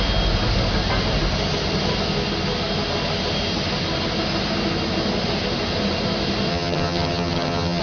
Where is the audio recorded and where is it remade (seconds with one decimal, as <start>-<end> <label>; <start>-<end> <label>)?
0.0-6.5 recorded; 6.5-7.8 remade